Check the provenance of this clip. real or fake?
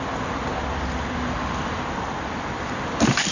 real